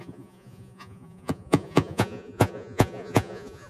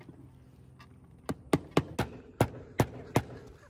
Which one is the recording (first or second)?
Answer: second